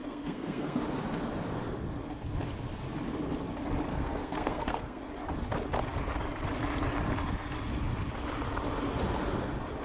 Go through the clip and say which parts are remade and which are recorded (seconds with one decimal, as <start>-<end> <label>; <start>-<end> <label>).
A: 0.0-0.8 remade; 0.8-3.9 recorded; 3.9-5.0 remade; 5.0-9.8 recorded